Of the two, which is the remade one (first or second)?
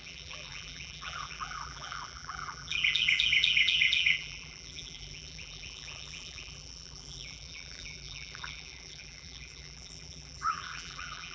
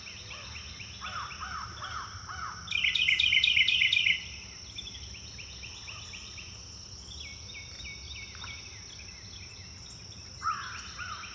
first